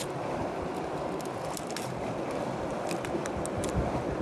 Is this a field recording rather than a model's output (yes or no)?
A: yes